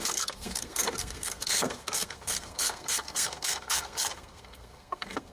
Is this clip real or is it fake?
fake